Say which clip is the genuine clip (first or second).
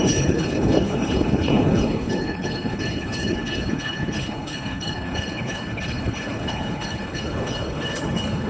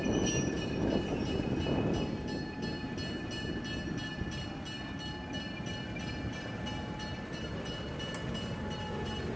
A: second